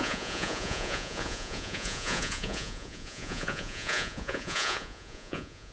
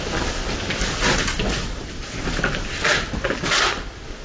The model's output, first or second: first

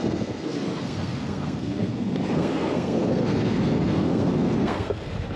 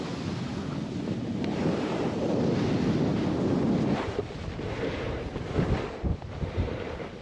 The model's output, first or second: first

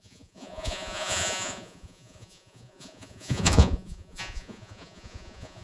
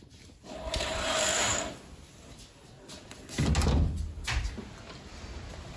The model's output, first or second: first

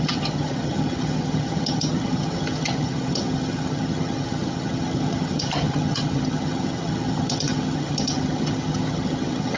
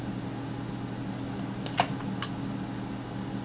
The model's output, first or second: first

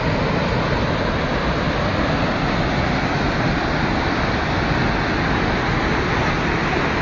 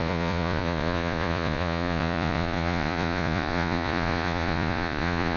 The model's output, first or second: second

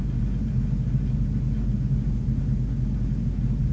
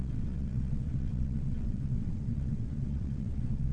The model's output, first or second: second